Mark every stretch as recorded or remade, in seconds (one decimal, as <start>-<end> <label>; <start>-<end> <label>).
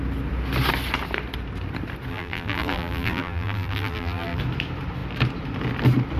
0.0-2.1 recorded; 2.1-4.4 remade; 4.4-6.2 recorded